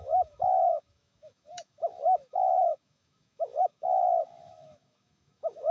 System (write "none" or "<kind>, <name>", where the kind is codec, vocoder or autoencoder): autoencoder, DAC-VAE